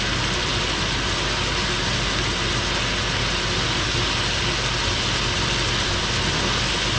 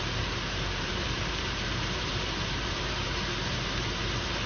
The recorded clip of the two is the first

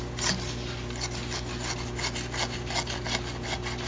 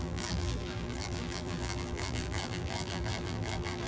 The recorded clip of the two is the first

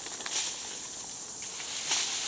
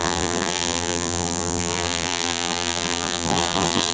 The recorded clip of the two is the first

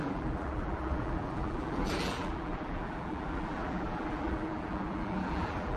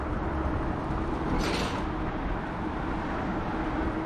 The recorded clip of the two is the second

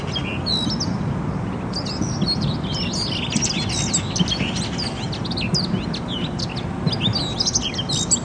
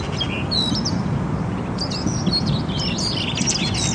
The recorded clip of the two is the first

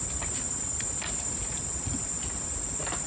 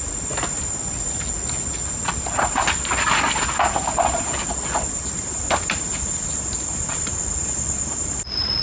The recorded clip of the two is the second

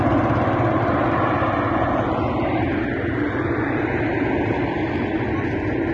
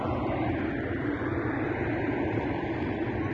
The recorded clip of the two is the first